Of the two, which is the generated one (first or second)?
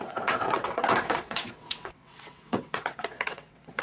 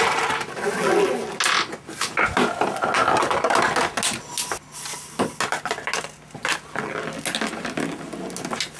first